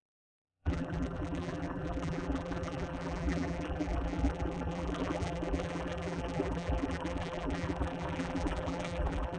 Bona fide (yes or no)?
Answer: no